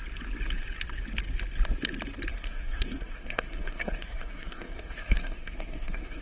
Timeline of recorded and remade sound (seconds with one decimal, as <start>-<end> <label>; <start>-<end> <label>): 0.0-2.3 recorded; 2.3-6.2 remade

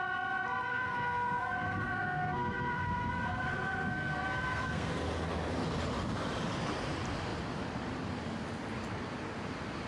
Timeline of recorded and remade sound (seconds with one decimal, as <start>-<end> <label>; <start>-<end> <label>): 0.0-0.7 recorded; 0.7-4.9 remade; 4.9-9.9 recorded